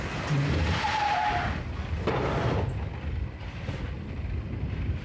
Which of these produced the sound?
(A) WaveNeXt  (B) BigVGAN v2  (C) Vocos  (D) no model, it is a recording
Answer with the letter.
D